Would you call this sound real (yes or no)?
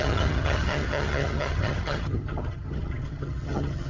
no